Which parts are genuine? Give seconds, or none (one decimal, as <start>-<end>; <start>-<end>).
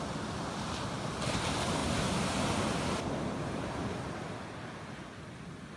0.0-1.8; 4.4-5.8